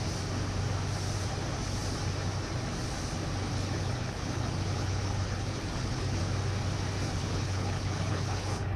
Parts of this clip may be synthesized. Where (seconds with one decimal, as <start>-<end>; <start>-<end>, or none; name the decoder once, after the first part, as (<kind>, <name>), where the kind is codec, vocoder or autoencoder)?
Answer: 3.5-6.2 (codec, HILCodec); 7.2-8.8